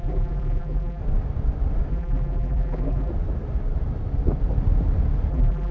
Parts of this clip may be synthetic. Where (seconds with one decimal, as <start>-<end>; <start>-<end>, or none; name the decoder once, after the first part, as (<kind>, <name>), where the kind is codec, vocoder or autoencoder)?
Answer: 0.0-1.0 (vocoder, BigVGAN v2); 1.9-3.1; 5.3-5.7